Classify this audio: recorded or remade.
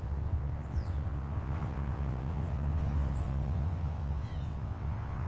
remade